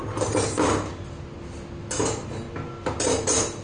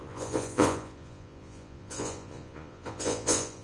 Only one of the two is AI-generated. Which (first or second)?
second